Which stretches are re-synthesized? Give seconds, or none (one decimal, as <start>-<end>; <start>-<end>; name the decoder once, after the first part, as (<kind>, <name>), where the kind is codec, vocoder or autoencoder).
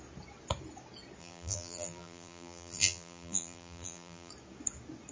1.2-4.3 (vocoder, BigVGAN v2)